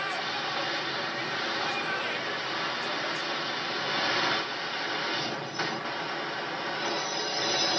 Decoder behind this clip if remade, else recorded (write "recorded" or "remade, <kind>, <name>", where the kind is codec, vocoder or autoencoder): recorded